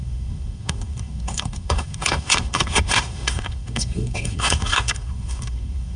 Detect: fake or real fake